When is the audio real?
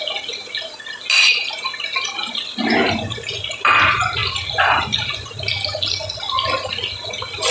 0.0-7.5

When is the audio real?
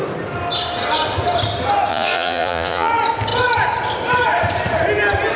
0.0-1.9; 2.9-5.4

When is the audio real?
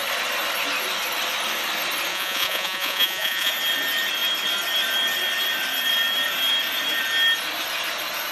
0.0-2.1; 3.5-8.3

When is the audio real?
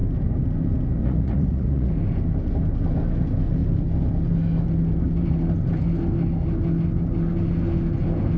0.0-1.0; 1.9-8.4